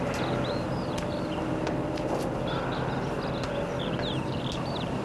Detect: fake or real real